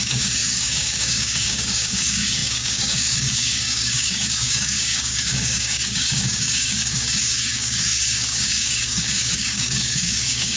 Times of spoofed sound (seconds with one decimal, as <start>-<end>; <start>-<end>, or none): 0.0-10.6

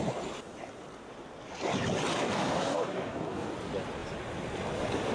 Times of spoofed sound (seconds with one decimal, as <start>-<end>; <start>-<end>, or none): 2.1-3.5